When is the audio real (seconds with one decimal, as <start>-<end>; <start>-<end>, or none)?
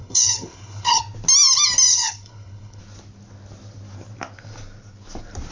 1.0-1.9; 2.8-5.5